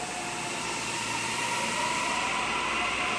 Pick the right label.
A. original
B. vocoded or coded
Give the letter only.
A